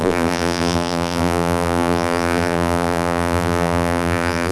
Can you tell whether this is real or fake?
fake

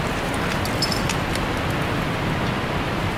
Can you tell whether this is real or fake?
real